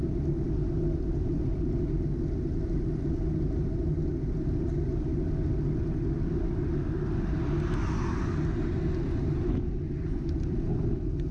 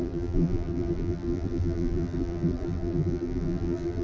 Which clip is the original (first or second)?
first